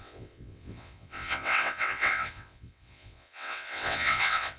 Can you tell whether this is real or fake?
fake